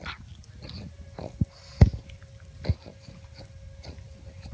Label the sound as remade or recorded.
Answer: recorded